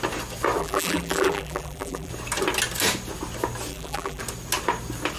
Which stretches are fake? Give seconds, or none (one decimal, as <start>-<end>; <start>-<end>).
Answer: 0.6-2.1; 3.7-4.2